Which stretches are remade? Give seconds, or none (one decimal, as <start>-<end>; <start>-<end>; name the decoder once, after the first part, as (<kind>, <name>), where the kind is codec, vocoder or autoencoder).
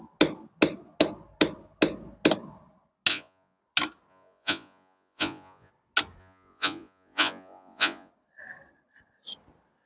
3.1-3.6 (vocoder, Vocos); 4.1-5.7; 6.2-8.1